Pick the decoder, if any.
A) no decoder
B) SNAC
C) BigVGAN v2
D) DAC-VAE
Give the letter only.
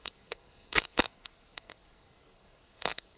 B